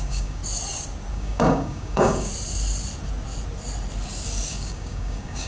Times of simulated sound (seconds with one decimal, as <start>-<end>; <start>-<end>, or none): 0.0-0.4; 1.1-2.3; 4.5-5.5